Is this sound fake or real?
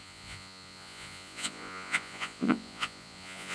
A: fake